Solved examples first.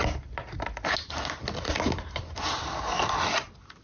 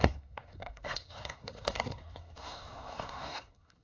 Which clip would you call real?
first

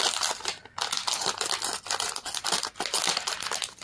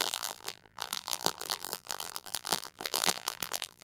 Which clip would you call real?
first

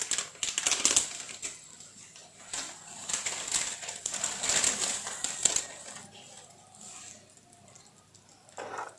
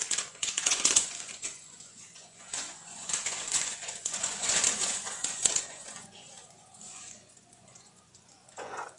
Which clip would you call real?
first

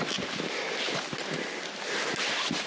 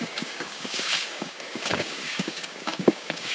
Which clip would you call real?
first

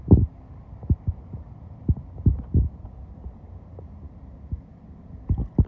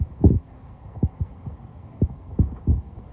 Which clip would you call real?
first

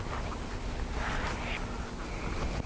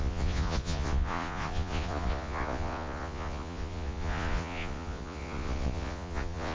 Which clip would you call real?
first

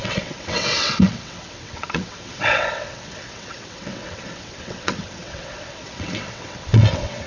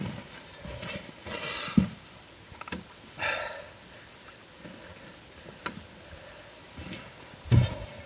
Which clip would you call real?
second